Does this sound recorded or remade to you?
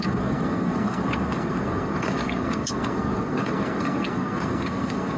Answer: remade